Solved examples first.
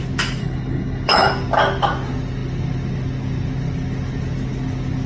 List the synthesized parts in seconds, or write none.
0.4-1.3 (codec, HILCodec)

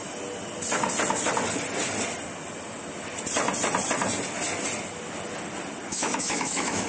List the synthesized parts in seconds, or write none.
5.9-6.9 (autoencoder, DAC-VAE)

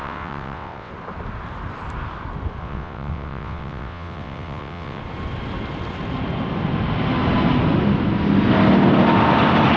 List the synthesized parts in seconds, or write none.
0.0-0.9 (vocoder, WaveNeXt); 2.6-5.0

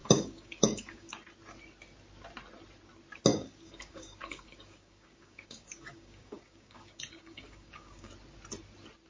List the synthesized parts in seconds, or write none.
0.0-1.1 (codec, DAC); 3.3-8.1

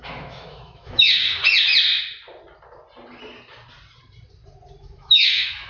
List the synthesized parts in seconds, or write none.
0.0-1.4 (autoencoder, DAC-VAE); 4.8-5.7

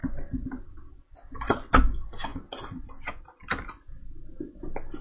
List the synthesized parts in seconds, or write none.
none